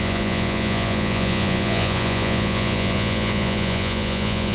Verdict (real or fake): fake